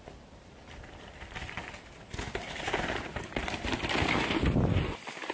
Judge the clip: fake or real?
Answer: real